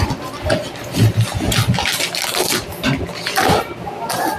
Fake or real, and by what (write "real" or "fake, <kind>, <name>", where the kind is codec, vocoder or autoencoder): real